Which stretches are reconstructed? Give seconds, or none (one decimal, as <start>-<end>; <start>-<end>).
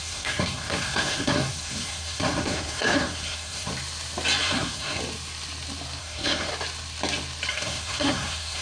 0.0-3.7; 4.4-5.0; 6.0-6.5; 7.5-8.6